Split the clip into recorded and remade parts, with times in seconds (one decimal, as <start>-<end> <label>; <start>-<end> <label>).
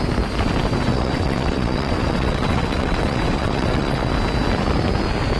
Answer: 0.0-0.9 recorded; 0.9-4.1 remade; 4.1-5.4 recorded